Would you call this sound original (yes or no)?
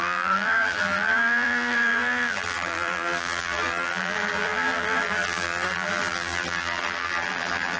no